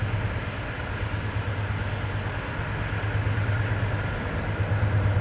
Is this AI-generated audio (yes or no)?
no